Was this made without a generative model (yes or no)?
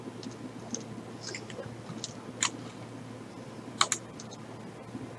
yes